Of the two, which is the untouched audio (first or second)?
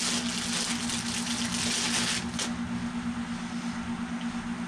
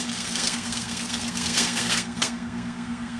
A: first